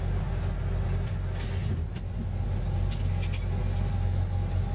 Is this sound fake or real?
real